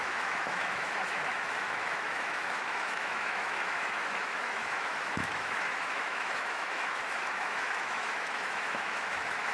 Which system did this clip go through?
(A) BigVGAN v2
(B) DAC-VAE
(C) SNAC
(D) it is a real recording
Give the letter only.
B